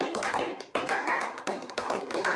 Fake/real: fake